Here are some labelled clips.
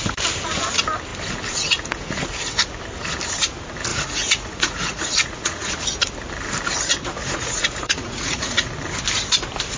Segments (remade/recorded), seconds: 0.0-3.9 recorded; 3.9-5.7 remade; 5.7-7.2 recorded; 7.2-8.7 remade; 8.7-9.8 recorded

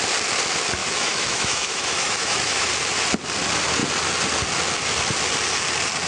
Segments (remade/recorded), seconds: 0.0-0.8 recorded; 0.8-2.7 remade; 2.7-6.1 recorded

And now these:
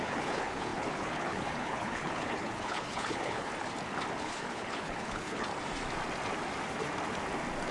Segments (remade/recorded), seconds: 0.0-3.5 remade; 3.5-4.2 recorded; 4.2-5.5 remade; 5.5-7.7 recorded

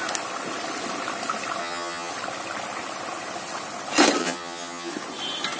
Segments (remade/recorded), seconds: 0.0-1.6 recorded; 1.6-2.1 remade; 2.1-4.2 recorded; 4.2-4.9 remade; 4.9-5.6 recorded

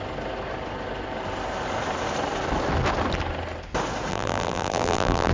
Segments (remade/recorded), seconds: 0.0-4.1 recorded; 4.1-5.3 remade

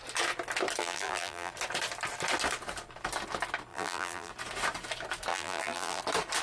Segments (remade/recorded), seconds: 0.0-0.8 recorded; 0.8-1.5 remade; 1.5-3.7 recorded; 3.7-4.3 remade; 4.3-5.3 recorded; 5.3-6.0 remade; 6.0-6.4 recorded